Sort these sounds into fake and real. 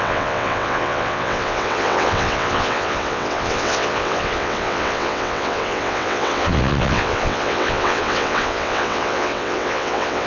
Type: fake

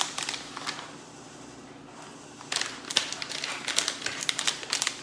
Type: real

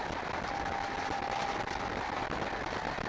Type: real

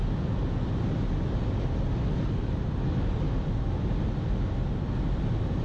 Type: real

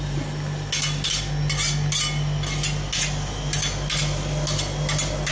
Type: real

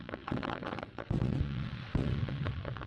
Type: fake